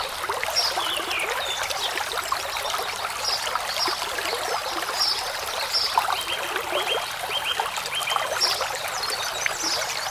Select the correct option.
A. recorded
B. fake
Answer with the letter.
A